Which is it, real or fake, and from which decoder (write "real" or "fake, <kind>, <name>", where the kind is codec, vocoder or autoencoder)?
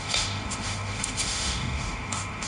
fake, autoencoder, DAC-VAE